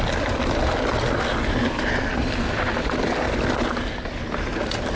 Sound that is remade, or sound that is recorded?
recorded